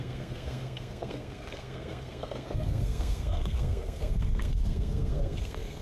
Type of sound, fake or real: fake